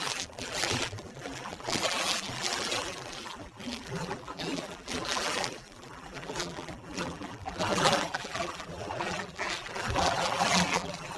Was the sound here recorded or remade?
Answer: remade